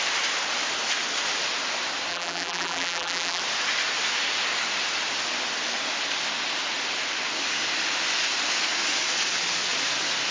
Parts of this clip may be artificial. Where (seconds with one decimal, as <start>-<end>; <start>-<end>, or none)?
2.1-3.4